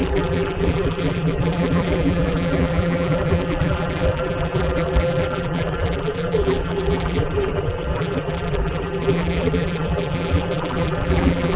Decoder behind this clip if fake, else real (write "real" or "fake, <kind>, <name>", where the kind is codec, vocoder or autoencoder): fake, vocoder, BigVGAN v2